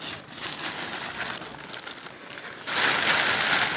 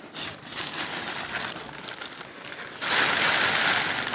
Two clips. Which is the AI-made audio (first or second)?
second